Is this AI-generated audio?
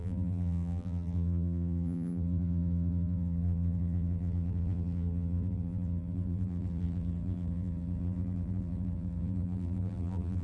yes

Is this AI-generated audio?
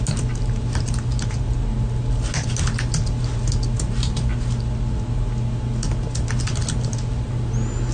no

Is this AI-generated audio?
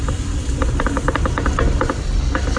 yes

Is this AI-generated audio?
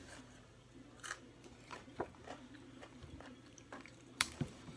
yes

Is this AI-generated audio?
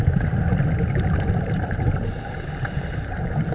yes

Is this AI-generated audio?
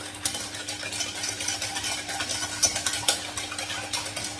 no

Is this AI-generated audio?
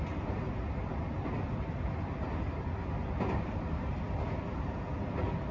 no